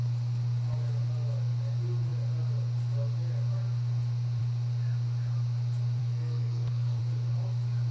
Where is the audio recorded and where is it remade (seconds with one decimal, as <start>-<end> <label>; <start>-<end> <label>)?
0.0-6.0 recorded; 6.0-7.0 remade; 7.0-7.9 recorded